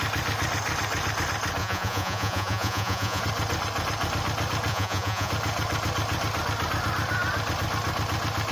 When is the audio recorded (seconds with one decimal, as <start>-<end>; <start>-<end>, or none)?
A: 0.0-1.6; 3.2-4.7; 5.3-8.5

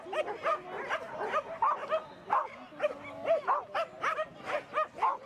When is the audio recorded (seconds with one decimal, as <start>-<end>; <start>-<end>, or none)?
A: 0.0-5.3

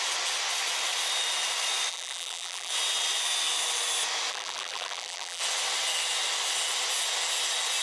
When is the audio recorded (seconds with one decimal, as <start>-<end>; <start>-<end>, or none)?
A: 0.0-1.9; 2.7-4.3; 5.4-7.8

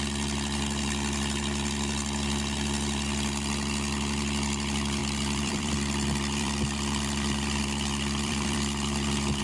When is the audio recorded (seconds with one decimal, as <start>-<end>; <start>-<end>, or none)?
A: 0.0-5.0

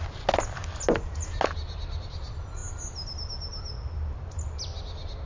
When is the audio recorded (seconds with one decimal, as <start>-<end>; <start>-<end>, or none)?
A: 0.0-5.3

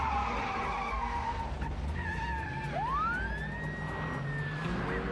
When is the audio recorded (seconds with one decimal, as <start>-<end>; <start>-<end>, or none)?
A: 0.0-0.9; 1.4-5.1

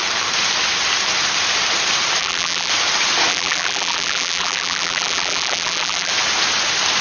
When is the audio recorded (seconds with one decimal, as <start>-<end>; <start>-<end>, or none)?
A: 0.0-2.2; 2.7-3.3; 6.1-7.0

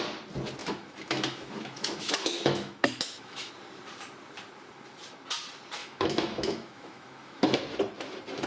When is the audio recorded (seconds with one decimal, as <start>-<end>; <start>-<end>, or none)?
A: 0.0-0.6; 3.5-5.8; 7.6-8.5